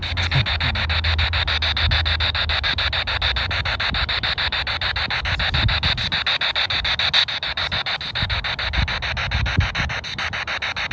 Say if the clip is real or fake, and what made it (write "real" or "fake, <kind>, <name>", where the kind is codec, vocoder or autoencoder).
real